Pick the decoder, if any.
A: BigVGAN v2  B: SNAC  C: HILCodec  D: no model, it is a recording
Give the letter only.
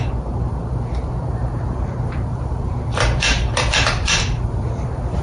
A